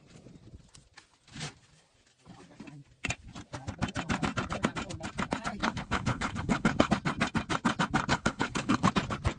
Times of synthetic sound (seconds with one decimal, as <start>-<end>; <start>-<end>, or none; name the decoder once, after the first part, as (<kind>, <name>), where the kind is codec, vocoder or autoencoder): 5.6-6.9 (codec, HILCodec); 8.1-8.9